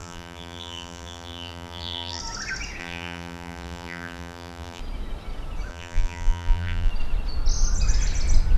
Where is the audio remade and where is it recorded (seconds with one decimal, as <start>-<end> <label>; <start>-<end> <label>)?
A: 0.0-2.2 remade; 2.2-2.8 recorded; 2.8-4.8 remade; 4.8-5.7 recorded; 5.7-6.9 remade; 6.9-8.6 recorded